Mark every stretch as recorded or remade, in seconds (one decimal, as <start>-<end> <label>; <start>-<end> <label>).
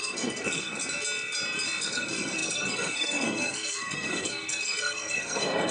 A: 0.0-0.8 remade; 0.8-1.8 recorded; 1.8-5.7 remade